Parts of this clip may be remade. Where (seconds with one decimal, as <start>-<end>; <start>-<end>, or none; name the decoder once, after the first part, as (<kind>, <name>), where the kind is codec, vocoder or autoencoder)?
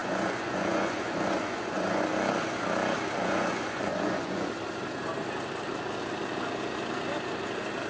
0.0-2.0 (vocoder, Vocos); 3.2-4.5